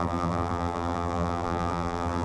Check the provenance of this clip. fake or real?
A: fake